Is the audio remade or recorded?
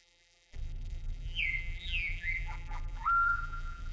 remade